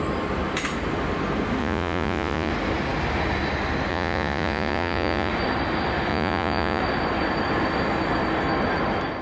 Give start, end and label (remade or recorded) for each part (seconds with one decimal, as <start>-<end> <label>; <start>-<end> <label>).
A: 0.0-1.6 recorded; 1.6-2.5 remade; 2.5-3.9 recorded; 3.9-5.3 remade; 5.3-6.1 recorded; 6.1-6.8 remade; 6.8-9.2 recorded